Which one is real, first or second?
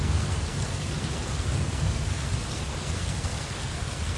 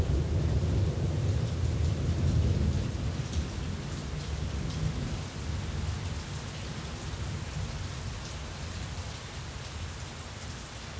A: second